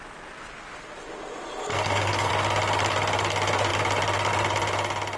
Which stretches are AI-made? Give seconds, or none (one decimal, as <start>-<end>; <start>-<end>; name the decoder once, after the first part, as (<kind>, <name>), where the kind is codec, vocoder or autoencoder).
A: 1.7-2.3 (codec, SNAC)